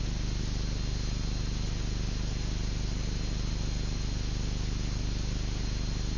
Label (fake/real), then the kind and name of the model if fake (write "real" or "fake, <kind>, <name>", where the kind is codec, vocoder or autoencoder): real